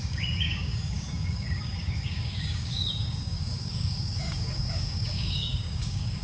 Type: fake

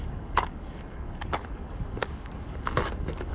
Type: fake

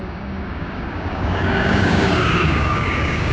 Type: fake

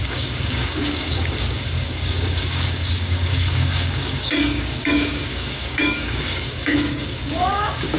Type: fake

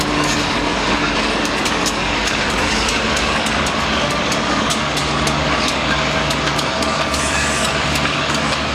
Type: fake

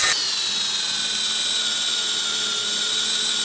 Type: real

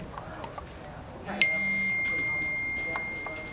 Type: real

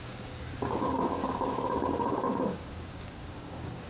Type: fake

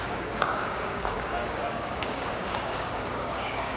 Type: fake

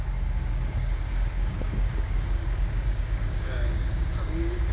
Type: fake